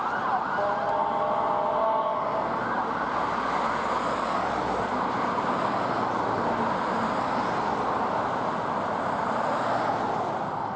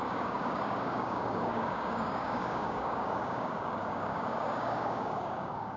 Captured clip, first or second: first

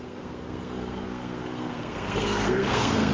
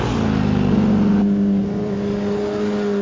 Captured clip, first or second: second